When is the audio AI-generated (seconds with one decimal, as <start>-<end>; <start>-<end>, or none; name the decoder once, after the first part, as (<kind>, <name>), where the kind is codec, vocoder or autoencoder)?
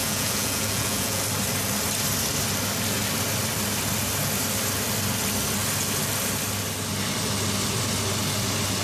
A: 0.0-1.2 (vocoder, Vocos)